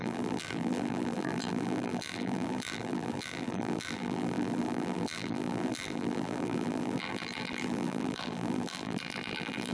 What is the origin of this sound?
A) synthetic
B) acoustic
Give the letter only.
A